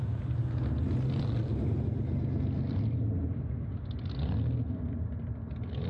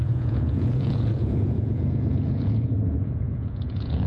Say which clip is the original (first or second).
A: first